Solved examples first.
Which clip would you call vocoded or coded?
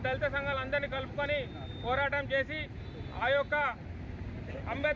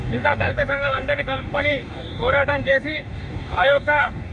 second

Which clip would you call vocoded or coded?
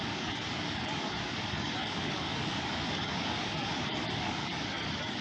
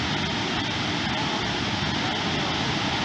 first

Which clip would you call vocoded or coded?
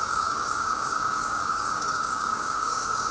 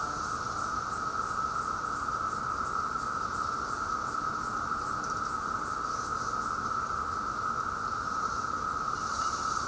first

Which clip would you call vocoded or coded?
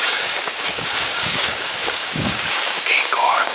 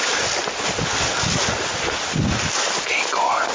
first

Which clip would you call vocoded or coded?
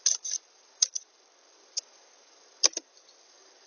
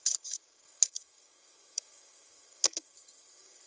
second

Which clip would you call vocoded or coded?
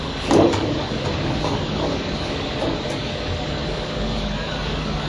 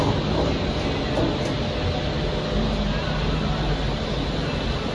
first